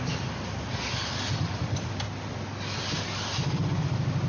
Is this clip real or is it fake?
real